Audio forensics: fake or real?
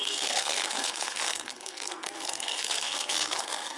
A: fake